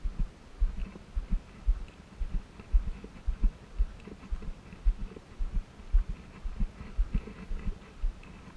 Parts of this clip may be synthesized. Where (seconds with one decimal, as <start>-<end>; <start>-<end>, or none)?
none